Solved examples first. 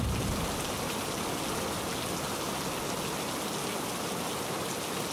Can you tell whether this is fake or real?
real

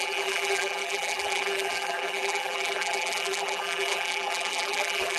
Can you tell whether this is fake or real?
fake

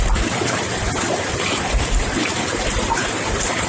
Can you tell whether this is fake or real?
fake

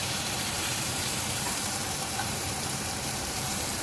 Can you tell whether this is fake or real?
fake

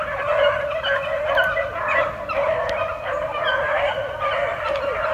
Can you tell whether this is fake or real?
fake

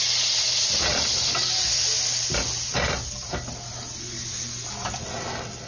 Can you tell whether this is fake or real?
real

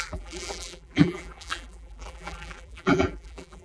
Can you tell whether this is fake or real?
fake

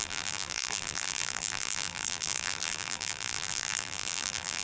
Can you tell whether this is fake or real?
fake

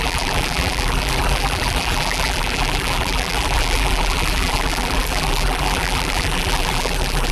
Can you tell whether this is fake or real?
fake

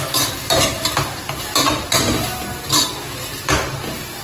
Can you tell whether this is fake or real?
real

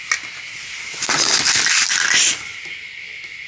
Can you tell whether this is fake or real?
real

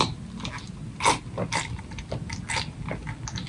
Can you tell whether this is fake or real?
real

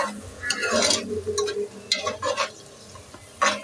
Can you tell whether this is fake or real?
real